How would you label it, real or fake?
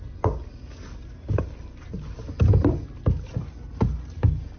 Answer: real